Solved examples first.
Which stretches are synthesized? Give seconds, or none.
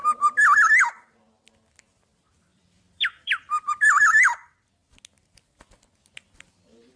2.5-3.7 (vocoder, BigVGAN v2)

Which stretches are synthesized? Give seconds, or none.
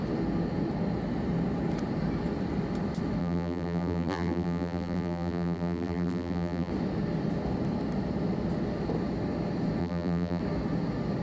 3.2-6.7 (vocoder, BigVGAN v2); 9.8-10.4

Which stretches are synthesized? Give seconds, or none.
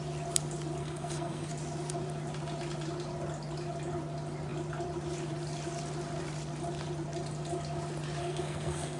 0.8-1.5 (codec, SNAC); 8.2-9.0